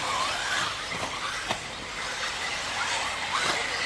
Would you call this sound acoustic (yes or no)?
yes